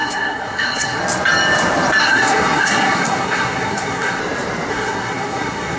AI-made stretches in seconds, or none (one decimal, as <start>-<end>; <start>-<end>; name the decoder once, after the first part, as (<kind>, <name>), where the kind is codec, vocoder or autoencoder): 0.0-1.0 (codec, SNAC); 2.0-4.2; 4.7-5.8

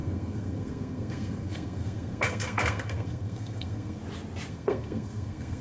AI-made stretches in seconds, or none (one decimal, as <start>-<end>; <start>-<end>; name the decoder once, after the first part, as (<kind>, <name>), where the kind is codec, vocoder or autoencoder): 0.0-4.0 (codec, SNAC); 4.5-5.6

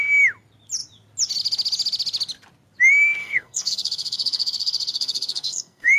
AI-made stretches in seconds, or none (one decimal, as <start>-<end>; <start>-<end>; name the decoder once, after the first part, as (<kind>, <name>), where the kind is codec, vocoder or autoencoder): 3.2-6.0 (codec, SNAC)

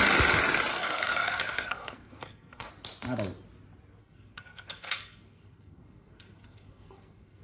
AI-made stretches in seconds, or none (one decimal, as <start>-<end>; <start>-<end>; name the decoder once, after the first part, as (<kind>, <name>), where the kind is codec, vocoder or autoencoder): 0.7-2.7 (codec, SNAC); 4.0-7.4

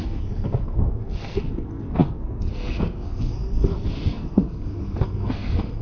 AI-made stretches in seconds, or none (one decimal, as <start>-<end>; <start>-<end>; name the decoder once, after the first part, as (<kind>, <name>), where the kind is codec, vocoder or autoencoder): 0.0-5.8 (codec, SNAC)

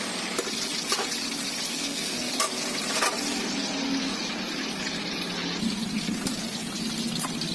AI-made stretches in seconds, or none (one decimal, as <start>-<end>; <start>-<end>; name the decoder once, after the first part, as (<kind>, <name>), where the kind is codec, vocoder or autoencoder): 1.7-2.3 (codec, SNAC)

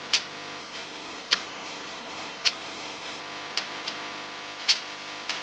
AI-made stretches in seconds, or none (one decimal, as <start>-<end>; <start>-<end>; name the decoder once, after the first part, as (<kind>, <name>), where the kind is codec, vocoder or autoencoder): 0.6-3.2 (codec, SNAC)

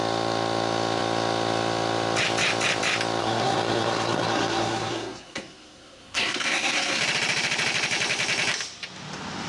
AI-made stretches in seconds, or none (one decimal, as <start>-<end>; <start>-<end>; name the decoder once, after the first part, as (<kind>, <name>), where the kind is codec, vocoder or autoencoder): 3.2-7.0 (codec, SNAC)